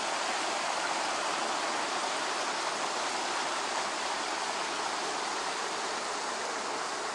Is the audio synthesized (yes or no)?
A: no